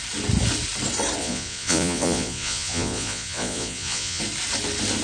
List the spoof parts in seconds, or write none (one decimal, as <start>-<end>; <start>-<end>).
1.2-4.2